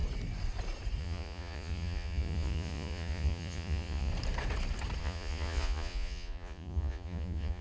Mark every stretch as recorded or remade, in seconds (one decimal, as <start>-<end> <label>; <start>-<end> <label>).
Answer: 0.0-1.0 recorded; 1.0-4.1 remade; 4.1-5.0 recorded; 5.0-7.6 remade